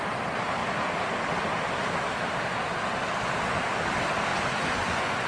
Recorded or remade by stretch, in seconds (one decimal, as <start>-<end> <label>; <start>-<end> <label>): 0.0-4.3 recorded; 4.3-5.3 remade